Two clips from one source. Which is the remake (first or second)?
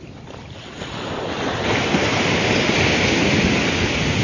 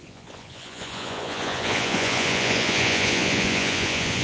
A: second